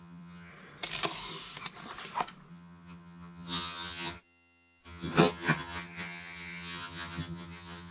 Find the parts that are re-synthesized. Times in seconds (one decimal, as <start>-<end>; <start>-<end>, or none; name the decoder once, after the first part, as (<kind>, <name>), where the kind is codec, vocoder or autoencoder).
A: 0.0-0.5 (vocoder, HiFi-GAN); 2.5-7.9